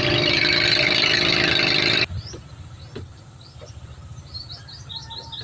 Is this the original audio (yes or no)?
yes